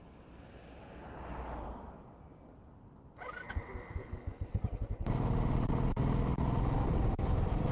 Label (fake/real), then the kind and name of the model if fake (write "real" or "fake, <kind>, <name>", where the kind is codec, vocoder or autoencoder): real